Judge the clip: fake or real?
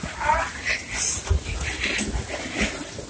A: real